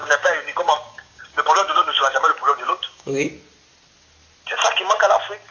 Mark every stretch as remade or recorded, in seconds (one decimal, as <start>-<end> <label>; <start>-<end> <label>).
0.0-3.3 remade; 3.3-5.5 recorded